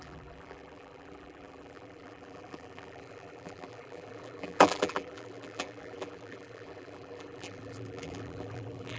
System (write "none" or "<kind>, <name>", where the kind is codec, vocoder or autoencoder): vocoder, BigVGAN v2